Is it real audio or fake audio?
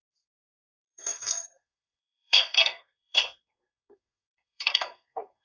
fake